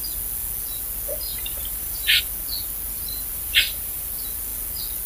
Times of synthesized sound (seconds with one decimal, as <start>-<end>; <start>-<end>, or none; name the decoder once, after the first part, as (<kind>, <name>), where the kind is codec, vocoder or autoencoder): 1.3-2.2 (vocoder, BigVGAN v2); 3.3-4.1